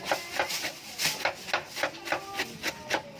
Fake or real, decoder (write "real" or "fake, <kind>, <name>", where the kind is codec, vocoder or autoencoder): real